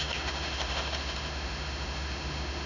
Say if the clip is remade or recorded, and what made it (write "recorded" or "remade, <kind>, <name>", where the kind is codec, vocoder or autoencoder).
remade, autoencoder, DAC-VAE